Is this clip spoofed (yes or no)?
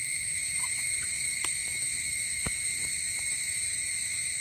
yes